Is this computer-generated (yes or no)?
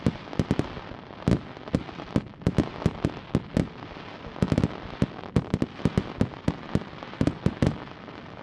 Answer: no